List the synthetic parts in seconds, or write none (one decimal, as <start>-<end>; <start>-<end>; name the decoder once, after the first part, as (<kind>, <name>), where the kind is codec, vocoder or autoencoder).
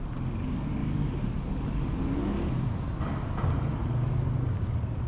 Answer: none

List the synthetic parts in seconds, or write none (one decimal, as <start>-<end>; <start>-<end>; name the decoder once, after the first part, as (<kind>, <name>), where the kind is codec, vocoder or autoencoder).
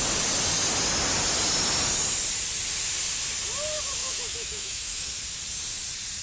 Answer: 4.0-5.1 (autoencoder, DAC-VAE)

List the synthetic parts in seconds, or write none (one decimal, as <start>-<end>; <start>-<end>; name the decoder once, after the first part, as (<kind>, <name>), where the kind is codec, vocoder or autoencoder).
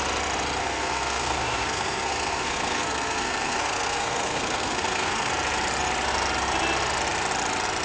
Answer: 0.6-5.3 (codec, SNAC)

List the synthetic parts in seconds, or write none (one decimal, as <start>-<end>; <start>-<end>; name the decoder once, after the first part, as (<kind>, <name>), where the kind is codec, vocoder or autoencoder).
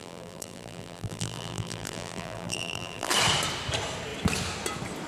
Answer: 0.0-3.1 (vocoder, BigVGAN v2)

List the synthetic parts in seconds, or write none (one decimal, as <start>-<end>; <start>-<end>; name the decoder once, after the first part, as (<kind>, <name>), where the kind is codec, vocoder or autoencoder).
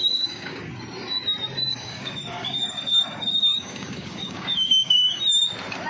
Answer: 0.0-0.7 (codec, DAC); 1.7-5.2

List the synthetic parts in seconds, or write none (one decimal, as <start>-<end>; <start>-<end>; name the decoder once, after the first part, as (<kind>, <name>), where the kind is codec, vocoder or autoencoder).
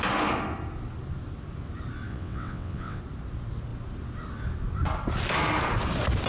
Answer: 2.1-3.0 (vocoder, WaveNeXt)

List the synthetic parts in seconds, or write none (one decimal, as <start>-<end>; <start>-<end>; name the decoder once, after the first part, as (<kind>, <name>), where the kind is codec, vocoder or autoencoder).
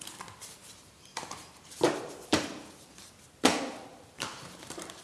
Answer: 0.6-2.7 (vocoder, BigVGAN v2); 3.9-5.0